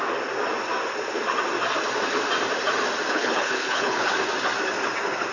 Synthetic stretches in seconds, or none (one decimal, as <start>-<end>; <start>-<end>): 3.1-4.1